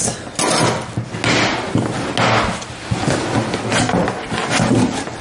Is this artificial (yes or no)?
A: no